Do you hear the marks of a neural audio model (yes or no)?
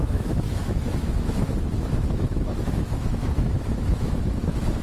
yes